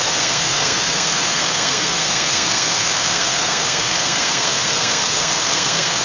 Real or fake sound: fake